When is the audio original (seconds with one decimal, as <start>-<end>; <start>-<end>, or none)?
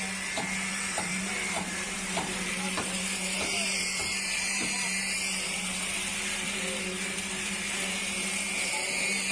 0.0-0.7; 5.2-9.3